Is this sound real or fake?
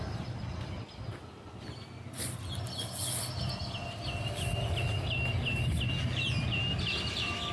real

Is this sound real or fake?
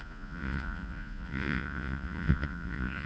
fake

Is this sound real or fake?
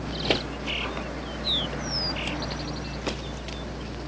real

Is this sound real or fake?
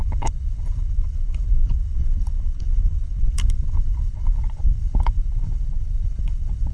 fake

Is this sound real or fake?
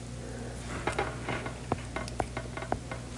real